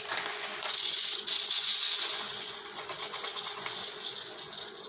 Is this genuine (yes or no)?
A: no